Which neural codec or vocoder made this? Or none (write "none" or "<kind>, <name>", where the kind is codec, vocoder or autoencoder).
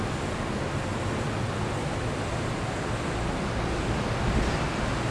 none